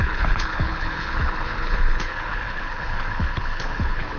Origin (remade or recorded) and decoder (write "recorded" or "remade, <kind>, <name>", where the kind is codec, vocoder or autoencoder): remade, codec, HILCodec